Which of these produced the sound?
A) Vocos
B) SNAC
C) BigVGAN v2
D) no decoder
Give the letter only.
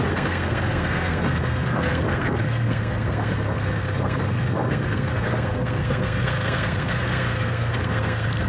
B